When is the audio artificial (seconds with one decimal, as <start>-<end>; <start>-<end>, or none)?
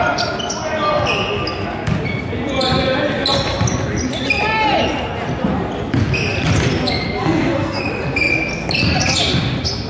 7.2-7.8